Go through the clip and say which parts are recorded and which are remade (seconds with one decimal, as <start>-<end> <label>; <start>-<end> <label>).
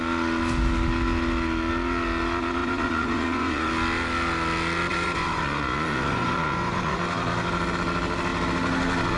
0.0-2.6 recorded; 2.6-3.7 remade; 3.7-4.9 recorded; 4.9-7.0 remade; 7.0-9.2 recorded